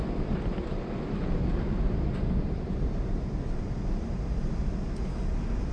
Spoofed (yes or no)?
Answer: no